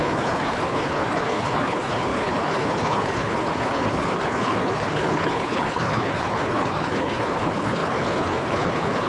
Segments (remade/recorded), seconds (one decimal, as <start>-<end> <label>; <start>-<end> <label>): 0.0-9.1 remade